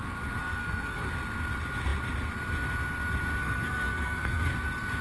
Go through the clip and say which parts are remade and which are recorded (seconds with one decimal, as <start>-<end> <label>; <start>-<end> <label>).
0.0-0.4 recorded; 0.4-1.1 remade; 1.1-3.4 recorded; 3.4-4.5 remade; 4.5-5.0 recorded